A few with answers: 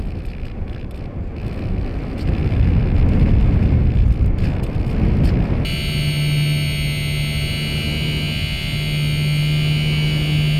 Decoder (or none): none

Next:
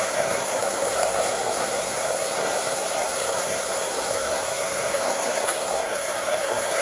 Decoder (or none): codec, SNAC